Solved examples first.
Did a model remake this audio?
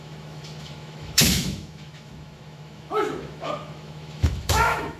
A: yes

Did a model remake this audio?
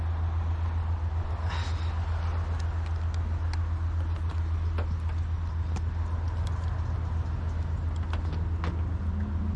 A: no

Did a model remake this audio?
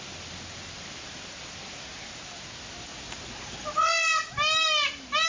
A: no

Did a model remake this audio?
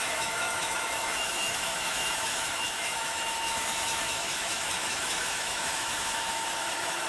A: yes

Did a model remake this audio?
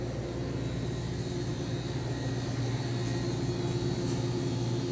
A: no